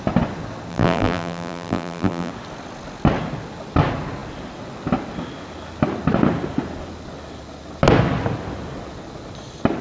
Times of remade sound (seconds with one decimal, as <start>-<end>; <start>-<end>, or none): 0.7-2.3

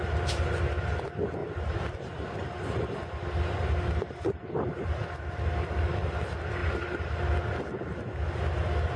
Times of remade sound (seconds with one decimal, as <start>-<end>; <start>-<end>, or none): 1.4-2.1